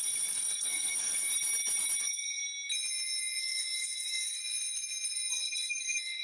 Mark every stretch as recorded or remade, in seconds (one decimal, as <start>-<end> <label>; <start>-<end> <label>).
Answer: 0.0-1.3 remade; 1.3-2.0 recorded; 2.0-2.4 remade; 2.4-3.4 recorded; 3.4-4.4 remade; 4.4-5.3 recorded; 5.3-6.2 remade